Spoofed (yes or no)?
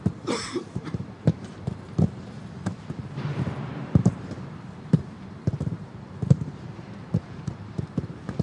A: yes